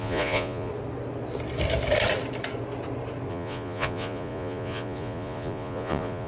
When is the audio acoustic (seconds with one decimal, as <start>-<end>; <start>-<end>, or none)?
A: 0.7-3.3